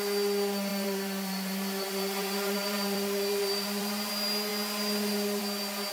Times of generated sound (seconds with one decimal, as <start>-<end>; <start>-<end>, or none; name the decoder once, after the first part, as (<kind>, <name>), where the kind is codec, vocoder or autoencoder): 0.7-4.1 (vocoder, BigVGAN v2)